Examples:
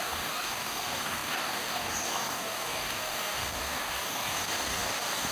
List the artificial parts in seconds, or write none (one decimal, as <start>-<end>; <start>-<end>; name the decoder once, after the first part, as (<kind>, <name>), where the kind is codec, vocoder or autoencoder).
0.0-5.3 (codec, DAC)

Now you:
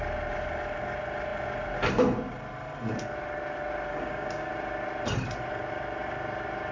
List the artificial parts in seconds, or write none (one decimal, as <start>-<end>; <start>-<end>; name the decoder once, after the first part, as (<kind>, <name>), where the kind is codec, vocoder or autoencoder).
3.9-4.5 (codec, DAC)

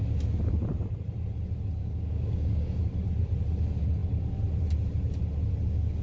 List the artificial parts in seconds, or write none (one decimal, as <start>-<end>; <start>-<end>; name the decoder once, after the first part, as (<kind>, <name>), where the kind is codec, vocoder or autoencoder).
1.8-2.8 (codec, DAC)